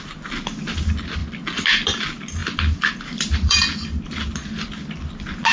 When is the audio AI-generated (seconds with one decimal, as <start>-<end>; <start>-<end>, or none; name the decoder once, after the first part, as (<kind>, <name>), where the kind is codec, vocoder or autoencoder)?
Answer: 1.2-2.0 (vocoder, BigVGAN v2); 2.4-4.0